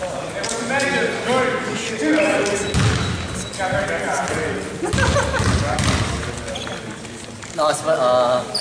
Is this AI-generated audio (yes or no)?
no